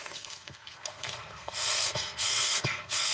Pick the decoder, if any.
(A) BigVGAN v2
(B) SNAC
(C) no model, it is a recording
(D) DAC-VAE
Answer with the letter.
B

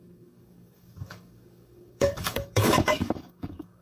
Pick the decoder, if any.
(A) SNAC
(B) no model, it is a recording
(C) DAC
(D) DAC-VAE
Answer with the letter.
C